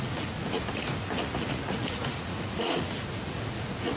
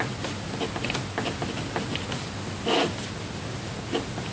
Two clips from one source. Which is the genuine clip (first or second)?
second